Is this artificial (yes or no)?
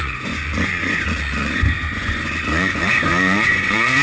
yes